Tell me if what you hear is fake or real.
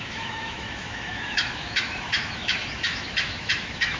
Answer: fake